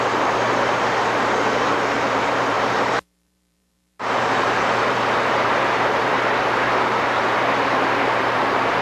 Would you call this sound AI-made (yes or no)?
yes